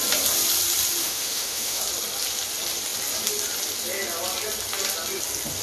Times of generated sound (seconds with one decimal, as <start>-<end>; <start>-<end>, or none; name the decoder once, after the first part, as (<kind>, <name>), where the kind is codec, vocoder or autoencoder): 1.0-1.8 (autoencoder, DAC-VAE)